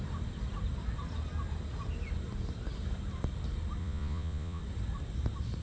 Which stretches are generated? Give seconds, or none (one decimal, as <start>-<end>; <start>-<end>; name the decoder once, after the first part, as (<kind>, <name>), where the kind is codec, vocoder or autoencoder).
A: 3.8-4.6 (vocoder, Vocos)